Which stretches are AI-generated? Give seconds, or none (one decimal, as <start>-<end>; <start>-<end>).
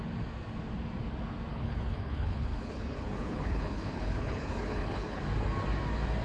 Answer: 1.5-5.2